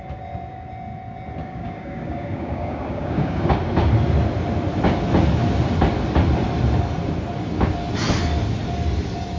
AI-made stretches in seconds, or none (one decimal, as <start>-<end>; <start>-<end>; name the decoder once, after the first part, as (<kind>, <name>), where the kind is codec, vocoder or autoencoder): 1.4-3.5 (codec, DAC)